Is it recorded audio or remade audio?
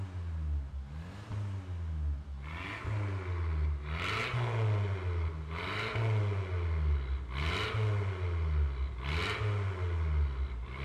recorded